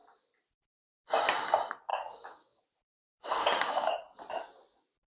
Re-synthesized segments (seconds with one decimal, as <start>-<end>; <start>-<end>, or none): 1.9-2.6; 3.4-3.9